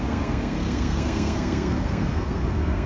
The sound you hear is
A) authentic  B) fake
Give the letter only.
B